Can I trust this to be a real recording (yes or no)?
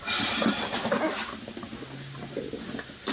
yes